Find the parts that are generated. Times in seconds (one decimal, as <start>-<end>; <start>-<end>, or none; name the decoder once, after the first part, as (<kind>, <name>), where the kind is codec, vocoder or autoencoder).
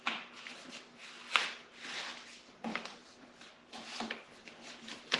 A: none